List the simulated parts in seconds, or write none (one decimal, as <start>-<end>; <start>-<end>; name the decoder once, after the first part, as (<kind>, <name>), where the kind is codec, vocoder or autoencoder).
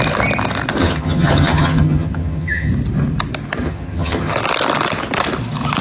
0.8-2.7 (vocoder, HiFi-GAN); 3.6-4.3